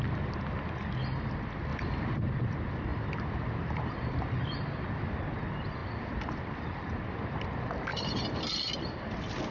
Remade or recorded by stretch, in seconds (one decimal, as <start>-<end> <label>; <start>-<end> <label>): 0.0-1.7 recorded; 1.7-2.2 remade; 2.2-7.9 recorded; 7.9-9.0 remade; 9.0-9.5 recorded